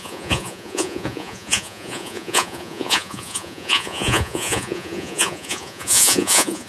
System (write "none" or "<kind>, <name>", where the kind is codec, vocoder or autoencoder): vocoder, Vocos